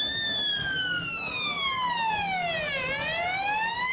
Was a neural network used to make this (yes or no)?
no